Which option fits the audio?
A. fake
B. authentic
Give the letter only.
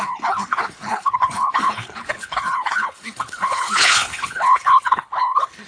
A